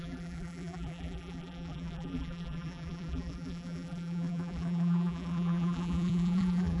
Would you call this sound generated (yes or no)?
yes